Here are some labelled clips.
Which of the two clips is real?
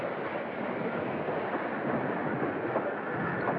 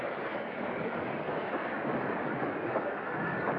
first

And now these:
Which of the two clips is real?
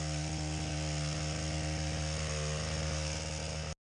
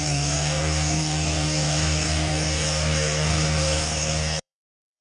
first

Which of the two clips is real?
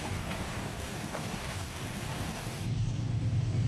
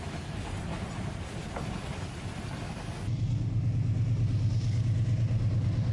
second